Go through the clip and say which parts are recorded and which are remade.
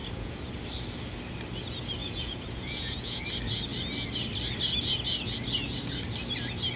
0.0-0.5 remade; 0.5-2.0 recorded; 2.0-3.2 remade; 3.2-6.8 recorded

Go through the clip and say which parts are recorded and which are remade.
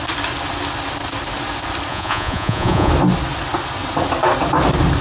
0.0-1.9 recorded; 1.9-2.9 remade; 2.9-5.0 recorded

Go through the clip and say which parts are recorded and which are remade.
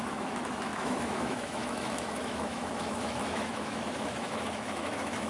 0.0-5.3 remade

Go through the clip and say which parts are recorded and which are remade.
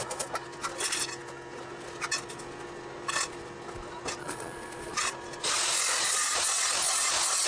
0.0-4.2 recorded; 4.2-5.1 remade; 5.1-7.5 recorded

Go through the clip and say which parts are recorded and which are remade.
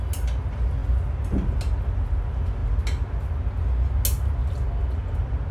0.0-5.5 recorded